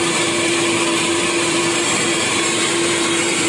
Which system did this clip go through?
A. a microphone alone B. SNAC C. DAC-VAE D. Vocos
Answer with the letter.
A